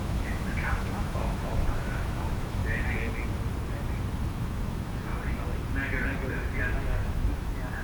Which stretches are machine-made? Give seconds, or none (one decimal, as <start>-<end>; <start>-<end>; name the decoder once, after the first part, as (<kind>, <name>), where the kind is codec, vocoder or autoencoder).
0.0-2.6 (autoencoder, DAC-VAE); 4.3-5.1; 6.6-7.8